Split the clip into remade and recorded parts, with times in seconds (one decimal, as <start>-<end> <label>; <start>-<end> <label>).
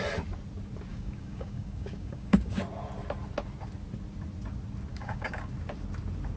0.0-0.9 recorded; 0.9-2.6 remade; 2.6-4.9 recorded; 4.9-5.5 remade; 5.5-6.4 recorded